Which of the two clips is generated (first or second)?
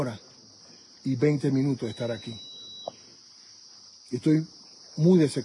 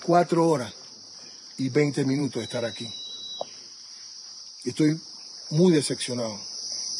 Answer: second